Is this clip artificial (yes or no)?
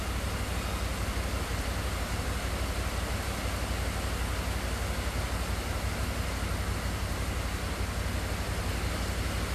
no